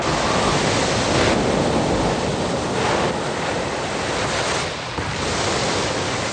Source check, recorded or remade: recorded